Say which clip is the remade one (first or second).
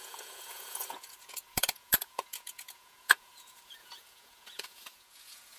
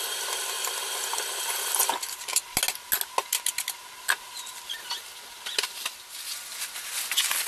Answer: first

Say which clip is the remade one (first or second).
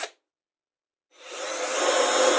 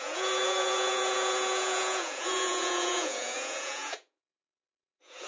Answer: second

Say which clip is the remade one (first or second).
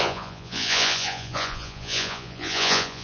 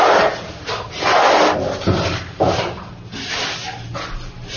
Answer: first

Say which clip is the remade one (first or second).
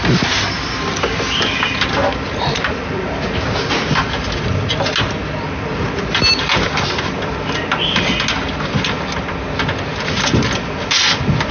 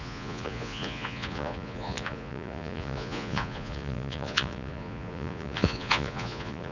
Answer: second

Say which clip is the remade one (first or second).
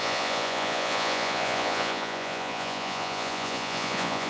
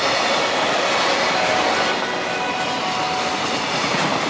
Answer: first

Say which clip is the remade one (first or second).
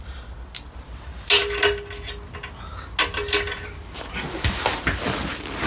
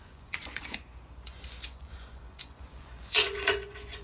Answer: second